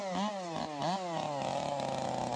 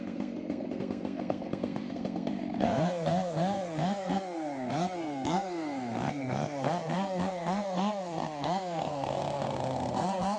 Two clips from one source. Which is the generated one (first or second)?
second